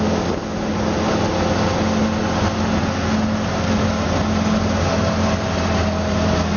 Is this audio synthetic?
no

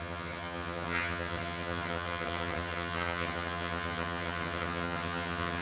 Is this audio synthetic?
yes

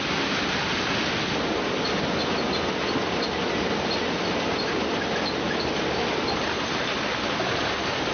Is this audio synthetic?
no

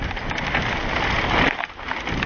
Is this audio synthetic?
no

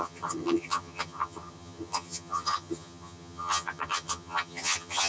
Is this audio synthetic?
yes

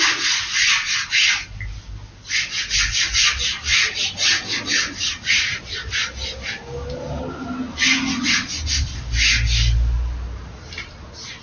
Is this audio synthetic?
no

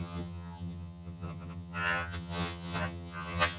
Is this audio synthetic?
yes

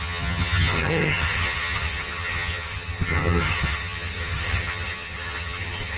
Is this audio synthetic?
yes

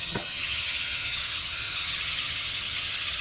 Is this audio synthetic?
yes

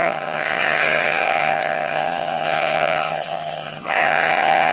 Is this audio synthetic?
yes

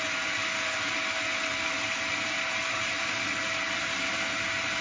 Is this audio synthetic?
no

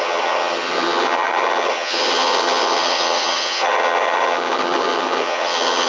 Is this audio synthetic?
yes